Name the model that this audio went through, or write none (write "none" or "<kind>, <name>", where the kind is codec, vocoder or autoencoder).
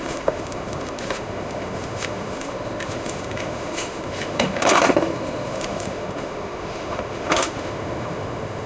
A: autoencoder, DAC-VAE